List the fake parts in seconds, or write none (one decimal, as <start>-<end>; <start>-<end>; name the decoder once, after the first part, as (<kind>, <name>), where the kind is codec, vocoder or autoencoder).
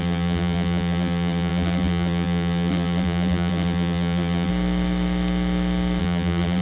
0.0-4.5 (vocoder, BigVGAN v2); 6.0-6.6